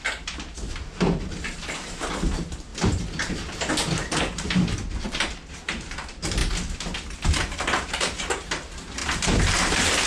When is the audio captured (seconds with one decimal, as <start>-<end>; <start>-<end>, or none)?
0.0-2.1; 2.7-4.2; 6.4-7.4